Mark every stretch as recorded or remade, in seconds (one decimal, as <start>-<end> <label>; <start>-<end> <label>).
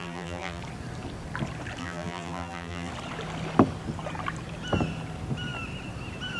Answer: 0.0-0.6 remade; 0.6-1.8 recorded; 1.8-2.9 remade; 2.9-6.4 recorded